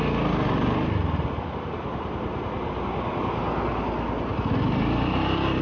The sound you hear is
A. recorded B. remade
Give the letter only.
A